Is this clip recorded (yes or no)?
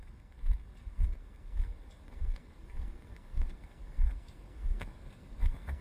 no